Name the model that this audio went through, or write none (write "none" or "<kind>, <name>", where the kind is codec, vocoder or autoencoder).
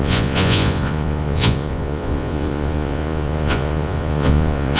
vocoder, Vocos